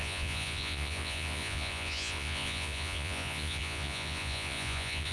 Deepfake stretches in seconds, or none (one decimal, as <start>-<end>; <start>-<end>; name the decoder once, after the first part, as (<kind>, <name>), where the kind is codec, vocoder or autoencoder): 0.0-5.1 (vocoder, Vocos)